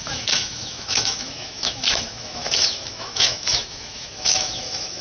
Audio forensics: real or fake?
fake